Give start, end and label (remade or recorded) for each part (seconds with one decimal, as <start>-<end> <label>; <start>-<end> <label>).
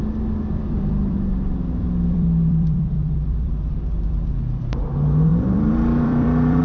0.0-0.6 recorded; 0.6-4.6 remade; 4.6-5.3 recorded; 5.3-6.6 remade